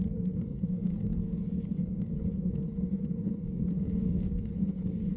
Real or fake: fake